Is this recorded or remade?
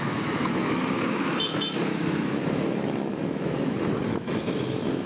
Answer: remade